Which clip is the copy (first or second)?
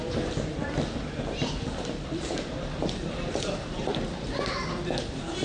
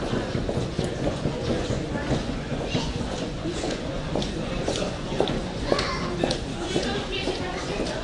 second